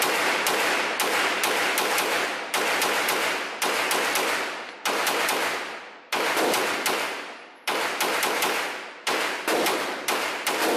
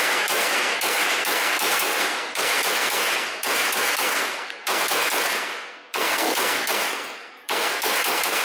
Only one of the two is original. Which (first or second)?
first